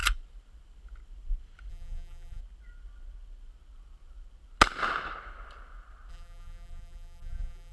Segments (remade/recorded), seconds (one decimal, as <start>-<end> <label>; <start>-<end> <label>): 0.0-1.7 recorded; 1.7-2.4 remade; 2.4-6.1 recorded; 6.1-7.7 remade